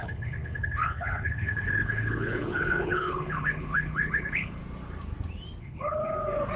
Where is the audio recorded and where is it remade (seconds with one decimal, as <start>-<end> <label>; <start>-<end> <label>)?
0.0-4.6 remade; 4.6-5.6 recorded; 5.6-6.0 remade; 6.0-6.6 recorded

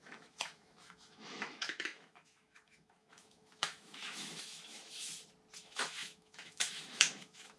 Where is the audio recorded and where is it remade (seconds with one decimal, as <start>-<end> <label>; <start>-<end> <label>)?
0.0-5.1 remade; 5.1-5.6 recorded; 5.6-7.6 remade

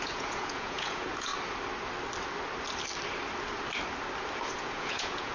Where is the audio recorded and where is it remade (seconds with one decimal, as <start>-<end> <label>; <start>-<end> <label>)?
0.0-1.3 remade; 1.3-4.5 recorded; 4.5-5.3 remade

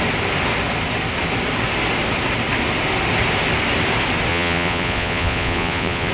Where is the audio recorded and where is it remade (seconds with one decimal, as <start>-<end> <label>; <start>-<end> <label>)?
0.0-4.3 recorded; 4.3-6.1 remade

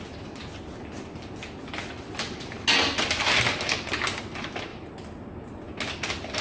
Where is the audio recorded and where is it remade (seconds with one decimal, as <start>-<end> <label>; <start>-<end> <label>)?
0.0-6.4 recorded

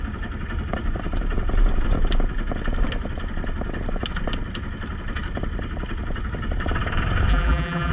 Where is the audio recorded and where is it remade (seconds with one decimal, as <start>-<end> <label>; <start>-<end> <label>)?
0.0-7.3 recorded; 7.3-7.9 remade

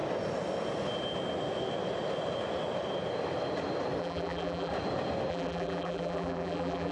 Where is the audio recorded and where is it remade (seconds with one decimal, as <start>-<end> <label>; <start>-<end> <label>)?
0.0-4.0 recorded; 4.0-4.7 remade; 4.7-5.3 recorded; 5.3-6.9 remade

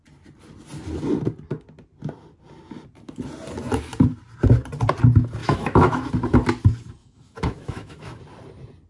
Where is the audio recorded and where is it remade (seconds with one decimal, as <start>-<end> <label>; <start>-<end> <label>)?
0.0-5.4 recorded; 5.4-6.1 remade; 6.1-7.0 recorded; 7.0-8.2 remade; 8.2-8.9 recorded